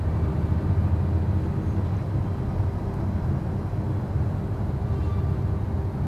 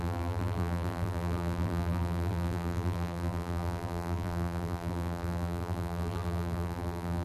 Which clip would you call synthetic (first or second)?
second